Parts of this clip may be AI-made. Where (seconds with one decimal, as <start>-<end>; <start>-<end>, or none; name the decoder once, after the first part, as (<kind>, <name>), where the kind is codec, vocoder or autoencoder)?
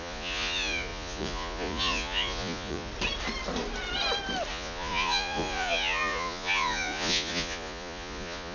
0.0-2.9 (vocoder, Vocos); 4.5-8.5